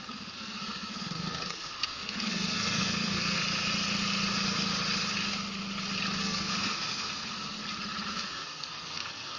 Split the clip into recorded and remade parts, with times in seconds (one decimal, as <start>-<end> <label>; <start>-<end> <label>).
0.0-3.4 remade; 3.4-6.2 recorded; 6.2-7.6 remade; 7.6-8.1 recorded; 8.1-9.4 remade

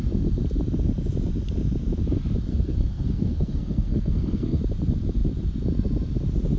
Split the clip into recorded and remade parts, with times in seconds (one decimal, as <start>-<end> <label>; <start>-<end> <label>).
0.0-2.5 recorded; 2.5-4.6 remade; 4.6-6.6 recorded

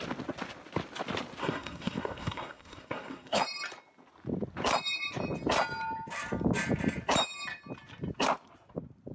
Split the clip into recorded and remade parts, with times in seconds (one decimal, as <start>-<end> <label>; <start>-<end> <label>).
0.0-1.4 recorded; 1.4-3.4 remade; 3.4-9.1 recorded

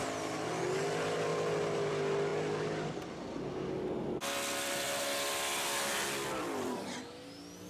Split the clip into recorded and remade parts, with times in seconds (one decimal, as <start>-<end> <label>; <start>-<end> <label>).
0.0-7.7 recorded

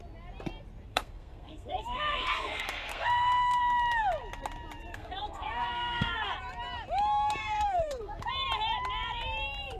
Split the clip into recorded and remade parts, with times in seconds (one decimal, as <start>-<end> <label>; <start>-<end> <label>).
0.0-0.9 recorded; 0.9-3.6 remade; 3.6-4.9 recorded; 4.9-6.3 remade; 6.3-7.4 recorded; 7.4-8.3 remade; 8.3-9.8 recorded

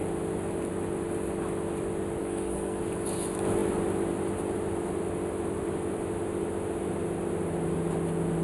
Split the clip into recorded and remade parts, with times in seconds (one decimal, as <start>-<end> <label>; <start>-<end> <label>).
0.0-2.2 recorded; 2.2-2.8 remade; 2.8-8.4 recorded

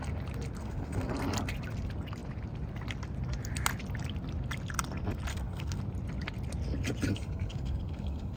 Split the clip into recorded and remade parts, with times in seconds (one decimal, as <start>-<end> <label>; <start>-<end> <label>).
0.0-0.6 recorded; 0.6-1.1 remade; 1.1-5.3 recorded; 5.3-5.8 remade; 5.8-7.1 recorded; 7.1-8.4 remade